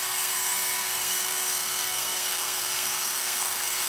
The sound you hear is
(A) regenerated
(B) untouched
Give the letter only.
A